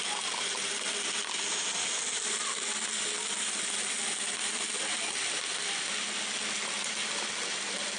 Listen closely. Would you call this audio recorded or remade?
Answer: recorded